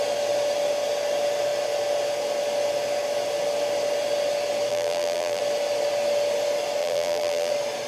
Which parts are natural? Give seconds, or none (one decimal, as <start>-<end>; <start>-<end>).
0.0-4.7; 5.4-6.8; 7.5-7.9